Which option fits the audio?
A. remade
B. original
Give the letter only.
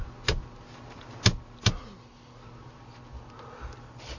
B